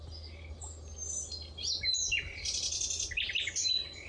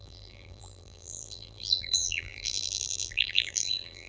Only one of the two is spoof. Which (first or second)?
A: second